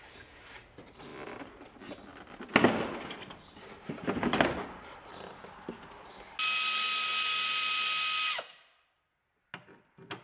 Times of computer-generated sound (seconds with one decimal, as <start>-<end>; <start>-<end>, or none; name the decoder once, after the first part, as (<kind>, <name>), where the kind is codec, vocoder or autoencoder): none